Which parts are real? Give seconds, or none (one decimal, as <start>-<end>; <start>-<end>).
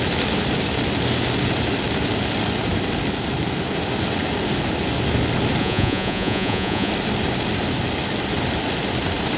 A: 0.0-5.6; 6.9-9.4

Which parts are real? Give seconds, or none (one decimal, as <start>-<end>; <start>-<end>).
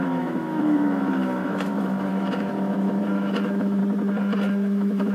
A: 3.8-4.5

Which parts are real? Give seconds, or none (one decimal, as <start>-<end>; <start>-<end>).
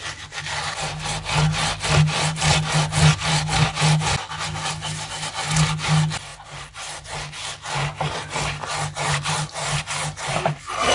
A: 0.0-10.9